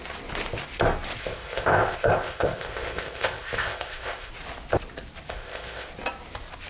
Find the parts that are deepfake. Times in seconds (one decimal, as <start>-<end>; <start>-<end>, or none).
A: 1.2-4.3; 5.3-5.9